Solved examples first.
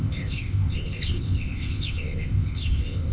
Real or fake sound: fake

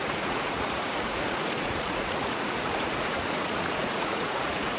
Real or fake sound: fake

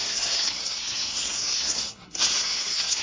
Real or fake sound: fake